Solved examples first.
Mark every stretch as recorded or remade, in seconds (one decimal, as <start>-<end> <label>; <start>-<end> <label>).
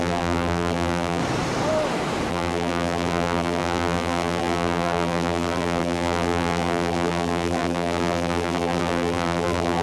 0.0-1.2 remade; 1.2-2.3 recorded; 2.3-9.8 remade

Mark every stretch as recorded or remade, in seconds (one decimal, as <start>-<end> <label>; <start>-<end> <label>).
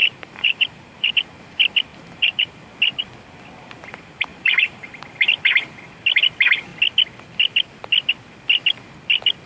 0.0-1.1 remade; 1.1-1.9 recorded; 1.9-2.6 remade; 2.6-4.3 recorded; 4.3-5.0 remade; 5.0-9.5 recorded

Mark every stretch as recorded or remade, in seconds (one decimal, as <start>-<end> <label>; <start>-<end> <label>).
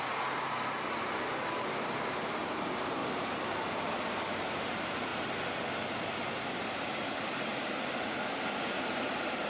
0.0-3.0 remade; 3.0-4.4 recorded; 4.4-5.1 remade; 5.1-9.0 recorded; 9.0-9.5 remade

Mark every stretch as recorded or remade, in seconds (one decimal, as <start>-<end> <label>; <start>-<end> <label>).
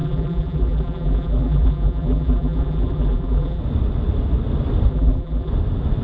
0.0-3.6 remade; 3.6-4.9 recorded; 4.9-5.5 remade; 5.5-6.0 recorded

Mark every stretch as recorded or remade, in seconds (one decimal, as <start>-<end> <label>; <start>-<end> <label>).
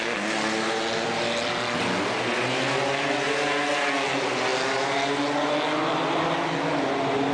0.0-7.3 recorded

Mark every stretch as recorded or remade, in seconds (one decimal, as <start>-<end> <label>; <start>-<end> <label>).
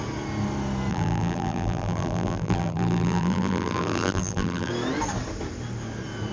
0.0-0.9 recorded; 0.9-4.7 remade; 4.7-6.3 recorded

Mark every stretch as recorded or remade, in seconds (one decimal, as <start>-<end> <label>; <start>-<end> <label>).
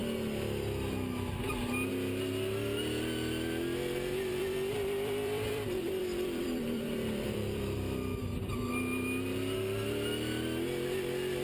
0.0-4.3 recorded; 4.3-8.2 remade; 8.2-11.4 recorded